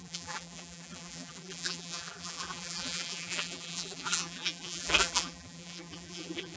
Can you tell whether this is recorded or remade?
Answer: remade